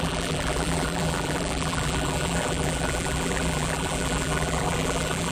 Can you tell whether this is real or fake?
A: fake